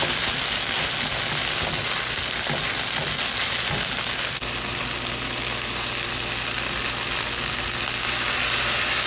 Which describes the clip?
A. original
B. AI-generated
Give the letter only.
A